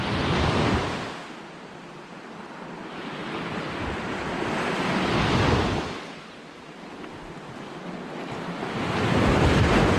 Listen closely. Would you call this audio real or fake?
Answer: real